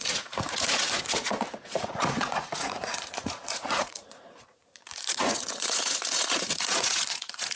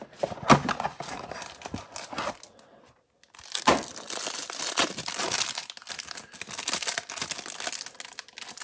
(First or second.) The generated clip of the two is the first